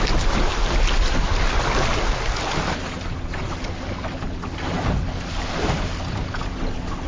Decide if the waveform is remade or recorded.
recorded